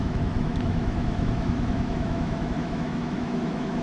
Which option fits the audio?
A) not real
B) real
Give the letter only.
A